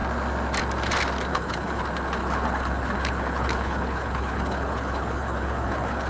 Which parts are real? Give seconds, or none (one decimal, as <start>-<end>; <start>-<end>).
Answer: 0.0-1.3; 1.8-2.2